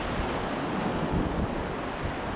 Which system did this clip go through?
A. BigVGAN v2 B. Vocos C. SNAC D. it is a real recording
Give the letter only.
D